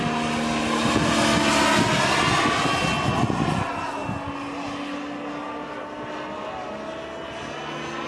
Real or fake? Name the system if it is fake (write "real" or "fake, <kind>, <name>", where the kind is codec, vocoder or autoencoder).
real